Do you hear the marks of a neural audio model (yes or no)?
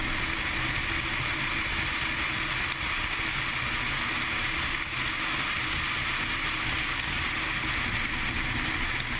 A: no